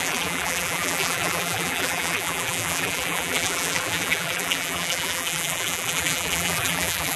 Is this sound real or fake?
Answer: fake